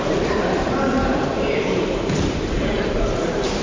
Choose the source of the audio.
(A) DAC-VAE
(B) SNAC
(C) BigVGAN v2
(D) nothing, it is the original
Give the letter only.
C